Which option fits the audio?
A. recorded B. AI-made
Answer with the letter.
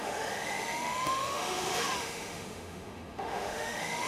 B